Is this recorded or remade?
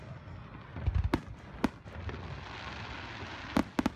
recorded